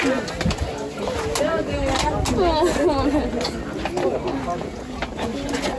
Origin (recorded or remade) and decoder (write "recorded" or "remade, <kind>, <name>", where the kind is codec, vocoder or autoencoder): recorded